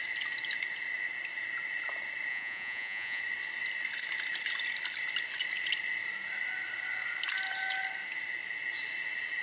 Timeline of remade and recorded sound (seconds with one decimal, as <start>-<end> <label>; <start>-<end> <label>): 0.0-2.3 recorded; 2.3-3.2 remade; 3.2-9.4 recorded